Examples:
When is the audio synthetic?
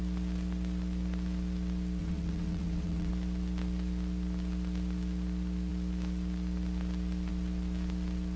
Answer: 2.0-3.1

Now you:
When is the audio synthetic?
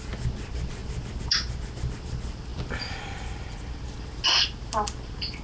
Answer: none